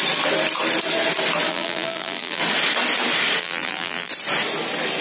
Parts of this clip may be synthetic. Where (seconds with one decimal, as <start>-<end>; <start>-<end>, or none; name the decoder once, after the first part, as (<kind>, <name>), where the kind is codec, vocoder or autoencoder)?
1.5-2.4 (vocoder, BigVGAN v2); 3.4-4.1